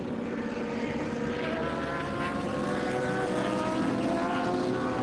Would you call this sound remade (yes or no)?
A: no